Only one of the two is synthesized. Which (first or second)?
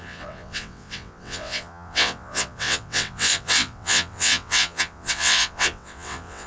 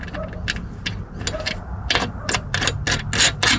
first